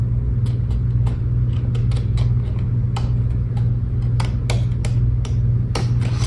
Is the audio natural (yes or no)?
yes